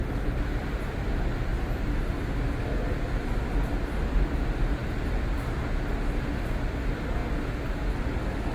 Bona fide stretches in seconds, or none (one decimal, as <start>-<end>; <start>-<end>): 0.0-1.5; 2.2-8.5